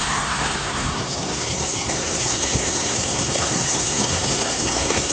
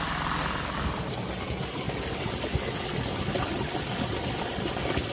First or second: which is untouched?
second